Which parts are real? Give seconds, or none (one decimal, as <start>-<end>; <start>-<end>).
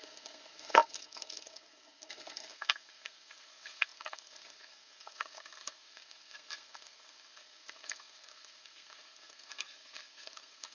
none